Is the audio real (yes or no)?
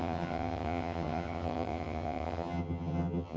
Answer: no